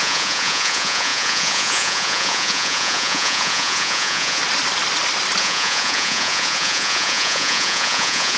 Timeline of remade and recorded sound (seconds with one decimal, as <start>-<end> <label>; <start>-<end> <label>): 0.0-4.4 remade; 4.4-5.4 recorded; 5.4-8.4 remade